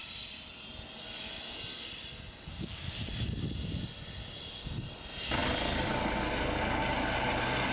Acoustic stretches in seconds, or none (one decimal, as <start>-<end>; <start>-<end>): 0.0-2.5; 3.1-7.7